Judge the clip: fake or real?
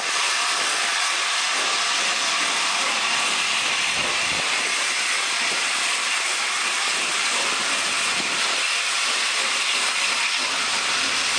fake